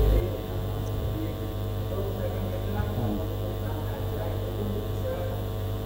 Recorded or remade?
remade